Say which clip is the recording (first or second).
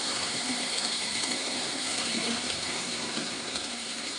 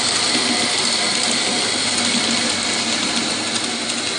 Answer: second